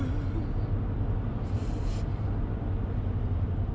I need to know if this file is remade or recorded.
recorded